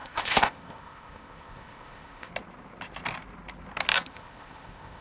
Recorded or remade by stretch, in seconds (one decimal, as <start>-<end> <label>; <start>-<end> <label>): 0.0-2.3 remade; 2.3-4.1 recorded; 4.1-5.0 remade